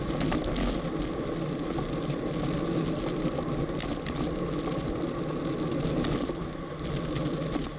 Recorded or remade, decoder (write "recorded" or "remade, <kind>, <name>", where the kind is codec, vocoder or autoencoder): recorded